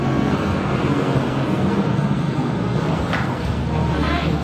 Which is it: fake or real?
fake